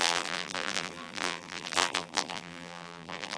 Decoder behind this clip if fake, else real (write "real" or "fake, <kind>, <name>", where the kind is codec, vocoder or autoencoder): fake, vocoder, BigVGAN v2